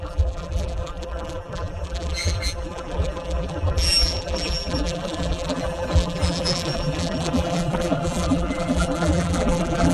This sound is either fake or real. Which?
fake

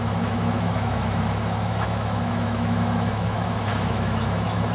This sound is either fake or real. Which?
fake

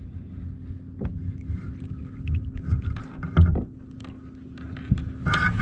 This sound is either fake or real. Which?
real